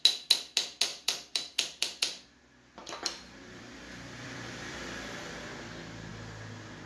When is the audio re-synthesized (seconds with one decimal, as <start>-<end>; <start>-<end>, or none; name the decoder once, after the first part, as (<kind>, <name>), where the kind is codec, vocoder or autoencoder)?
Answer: 0.9-2.4 (vocoder, BigVGAN v2); 2.8-4.8